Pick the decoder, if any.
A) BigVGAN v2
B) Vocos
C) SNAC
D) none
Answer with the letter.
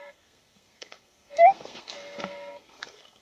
C